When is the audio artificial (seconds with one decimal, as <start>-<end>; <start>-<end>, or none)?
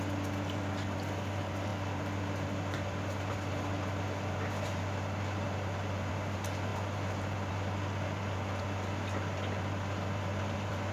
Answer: 1.7-6.1